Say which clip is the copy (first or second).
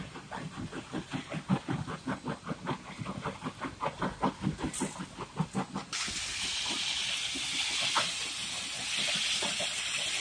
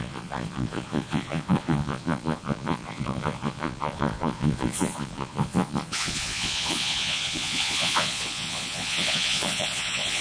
second